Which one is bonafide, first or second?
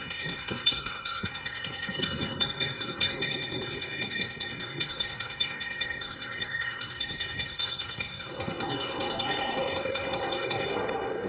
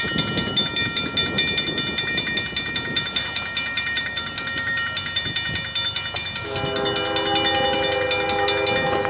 second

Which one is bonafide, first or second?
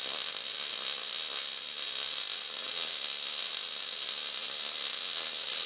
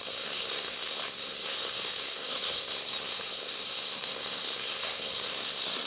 first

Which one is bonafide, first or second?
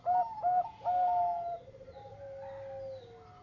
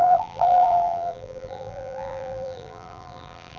first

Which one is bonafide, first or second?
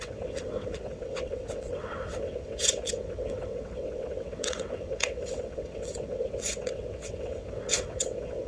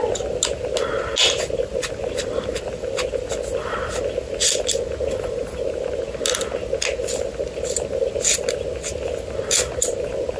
second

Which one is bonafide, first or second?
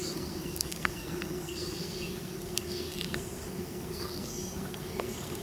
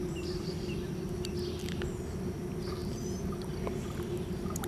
second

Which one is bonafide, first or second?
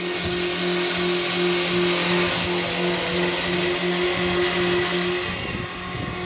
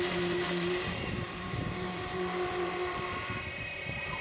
first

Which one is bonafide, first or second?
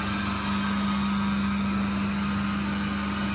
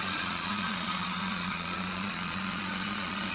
first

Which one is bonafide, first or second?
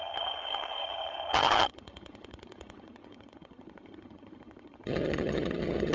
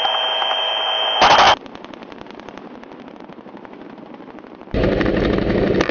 second